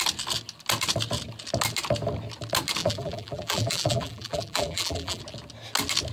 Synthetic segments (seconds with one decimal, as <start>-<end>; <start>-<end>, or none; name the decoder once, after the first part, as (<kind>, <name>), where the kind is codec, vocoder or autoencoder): 2.8-5.2 (vocoder, BigVGAN v2)